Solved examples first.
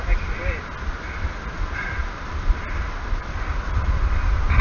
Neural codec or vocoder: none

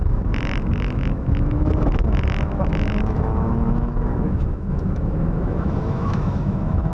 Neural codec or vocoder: autoencoder, DAC-VAE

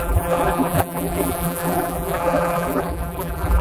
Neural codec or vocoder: vocoder, BigVGAN v2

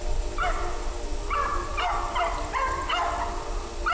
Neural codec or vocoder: none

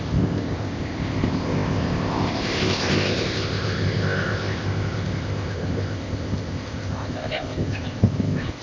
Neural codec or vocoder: codec, ZipCodec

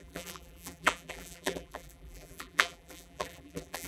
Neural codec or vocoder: vocoder, BigVGAN v2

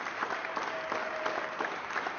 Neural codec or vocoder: none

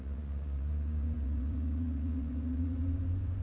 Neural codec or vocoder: vocoder, Vocos